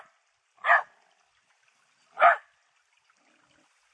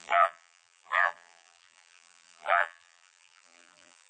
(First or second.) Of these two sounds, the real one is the first